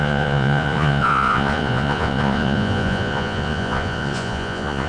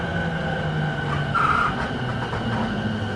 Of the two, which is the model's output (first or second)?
first